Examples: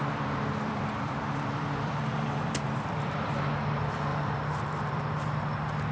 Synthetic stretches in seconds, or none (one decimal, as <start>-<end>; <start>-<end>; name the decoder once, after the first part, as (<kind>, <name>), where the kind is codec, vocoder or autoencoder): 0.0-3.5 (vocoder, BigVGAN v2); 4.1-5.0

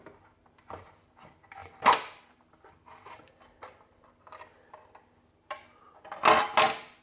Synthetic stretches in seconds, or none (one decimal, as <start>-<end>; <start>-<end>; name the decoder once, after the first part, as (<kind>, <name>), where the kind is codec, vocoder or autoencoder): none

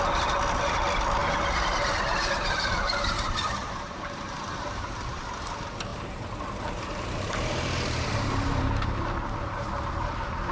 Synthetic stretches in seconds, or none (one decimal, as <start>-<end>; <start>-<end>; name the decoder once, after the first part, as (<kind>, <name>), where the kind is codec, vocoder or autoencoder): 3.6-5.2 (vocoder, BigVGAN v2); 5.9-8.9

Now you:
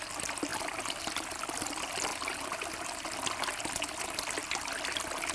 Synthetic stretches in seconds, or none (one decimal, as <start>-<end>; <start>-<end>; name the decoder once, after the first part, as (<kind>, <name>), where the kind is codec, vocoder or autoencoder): 2.1-3.0 (vocoder, BigVGAN v2)